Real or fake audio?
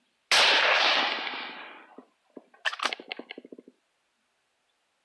real